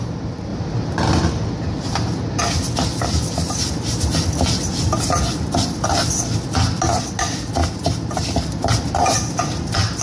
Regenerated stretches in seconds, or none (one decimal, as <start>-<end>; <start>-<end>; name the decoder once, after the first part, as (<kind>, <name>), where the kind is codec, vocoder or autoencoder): none